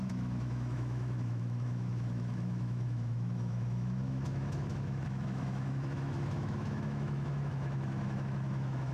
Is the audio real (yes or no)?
no